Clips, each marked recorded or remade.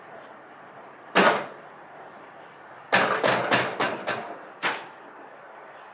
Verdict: recorded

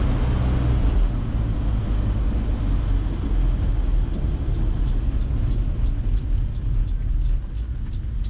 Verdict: recorded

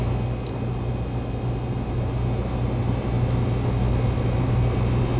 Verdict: recorded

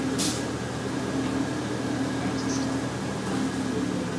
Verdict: recorded